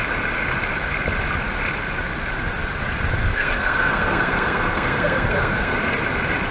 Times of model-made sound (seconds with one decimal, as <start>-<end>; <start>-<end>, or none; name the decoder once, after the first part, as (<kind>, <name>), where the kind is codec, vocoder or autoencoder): 3.2-5.8 (codec, SNAC)